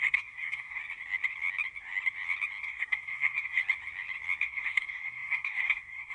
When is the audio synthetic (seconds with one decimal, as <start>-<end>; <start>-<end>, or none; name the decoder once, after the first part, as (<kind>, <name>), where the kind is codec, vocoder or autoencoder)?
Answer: 0.0-0.8 (codec, SNAC); 2.6-3.6; 4.4-6.1